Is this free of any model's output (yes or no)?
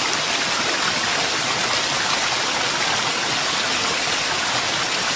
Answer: yes